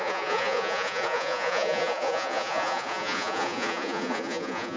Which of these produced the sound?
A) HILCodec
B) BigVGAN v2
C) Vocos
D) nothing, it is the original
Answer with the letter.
C